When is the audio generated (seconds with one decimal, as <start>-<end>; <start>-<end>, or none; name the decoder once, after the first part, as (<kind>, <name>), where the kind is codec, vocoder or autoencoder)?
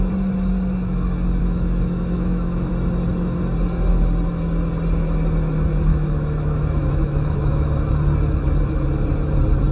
1.4-2.7 (autoencoder, DAC-VAE); 5.9-7.9